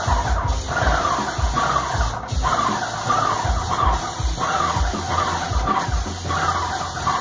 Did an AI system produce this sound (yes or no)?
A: no